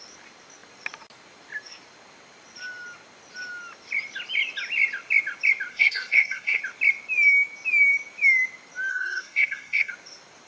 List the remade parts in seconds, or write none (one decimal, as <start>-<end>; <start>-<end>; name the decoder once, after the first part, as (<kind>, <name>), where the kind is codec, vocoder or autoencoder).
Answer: 5.7-6.6 (codec, SNAC); 8.9-9.9